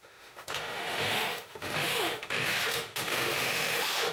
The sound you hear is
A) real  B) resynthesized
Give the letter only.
B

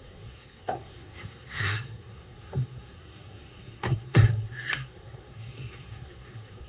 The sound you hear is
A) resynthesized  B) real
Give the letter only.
A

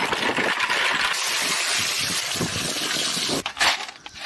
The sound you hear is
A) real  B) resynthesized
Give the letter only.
A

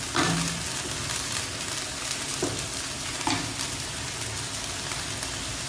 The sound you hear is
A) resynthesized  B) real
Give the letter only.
B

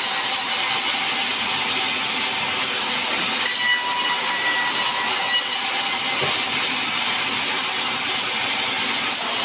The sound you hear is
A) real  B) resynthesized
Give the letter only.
A